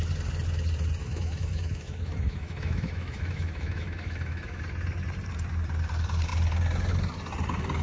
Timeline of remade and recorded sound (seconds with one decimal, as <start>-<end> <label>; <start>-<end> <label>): 0.0-1.0 recorded; 1.0-4.6 remade; 4.6-7.8 recorded